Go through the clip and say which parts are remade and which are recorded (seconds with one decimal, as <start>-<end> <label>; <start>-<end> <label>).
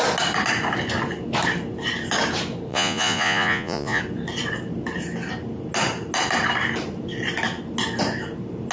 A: 0.0-2.7 recorded; 2.7-4.0 remade; 4.0-8.7 recorded